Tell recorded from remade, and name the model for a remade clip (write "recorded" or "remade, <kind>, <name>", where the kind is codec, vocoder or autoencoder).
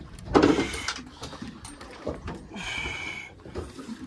remade, vocoder, BigVGAN v2